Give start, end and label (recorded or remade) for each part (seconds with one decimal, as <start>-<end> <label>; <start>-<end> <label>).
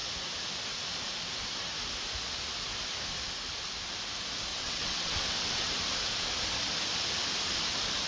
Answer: 0.0-4.5 recorded; 4.5-5.7 remade; 5.7-8.1 recorded